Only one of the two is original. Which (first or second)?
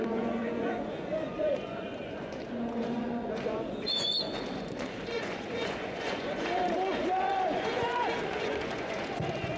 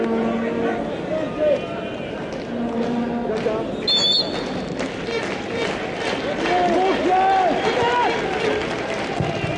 second